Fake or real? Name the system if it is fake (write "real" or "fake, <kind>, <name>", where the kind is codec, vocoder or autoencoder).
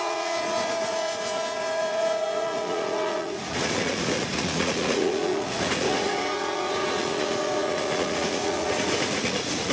fake, vocoder, Vocos